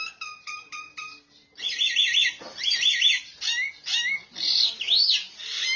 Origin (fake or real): real